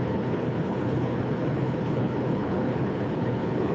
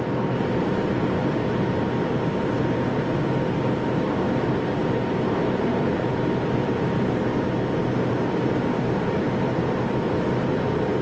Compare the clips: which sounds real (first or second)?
second